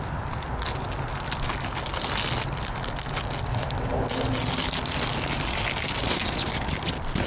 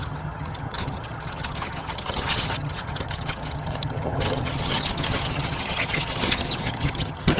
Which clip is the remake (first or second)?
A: second